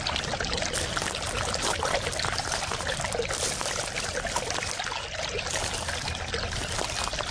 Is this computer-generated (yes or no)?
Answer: no